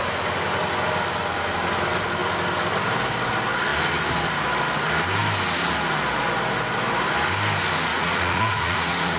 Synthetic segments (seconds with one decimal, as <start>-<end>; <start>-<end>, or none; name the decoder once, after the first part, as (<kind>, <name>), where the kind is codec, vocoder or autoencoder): 7.9-9.2 (vocoder, Vocos)